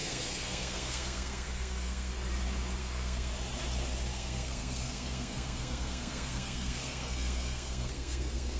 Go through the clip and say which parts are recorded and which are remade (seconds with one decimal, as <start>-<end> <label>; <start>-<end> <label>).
0.0-2.1 remade; 2.1-2.8 recorded; 2.8-3.3 remade; 3.3-4.1 recorded; 4.1-8.6 remade